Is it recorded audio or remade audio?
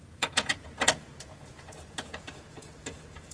remade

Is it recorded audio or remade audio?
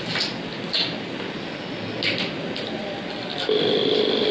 recorded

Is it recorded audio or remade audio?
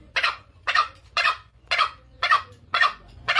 remade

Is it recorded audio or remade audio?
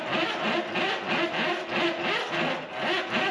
recorded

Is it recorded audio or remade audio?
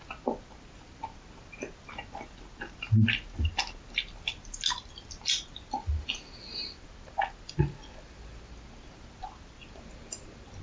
recorded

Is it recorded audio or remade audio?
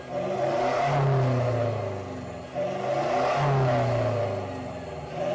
recorded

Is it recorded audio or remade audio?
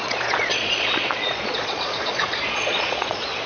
remade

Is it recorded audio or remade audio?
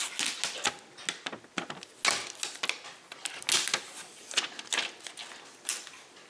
recorded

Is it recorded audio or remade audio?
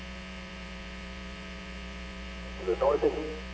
remade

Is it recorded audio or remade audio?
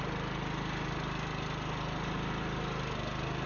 recorded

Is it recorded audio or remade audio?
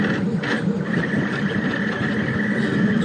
recorded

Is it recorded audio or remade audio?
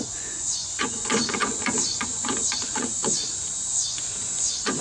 remade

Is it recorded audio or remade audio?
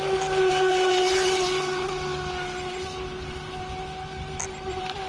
recorded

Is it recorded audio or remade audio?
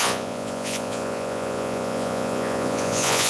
remade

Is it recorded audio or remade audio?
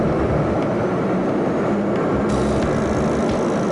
recorded